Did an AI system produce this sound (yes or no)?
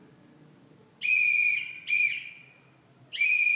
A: no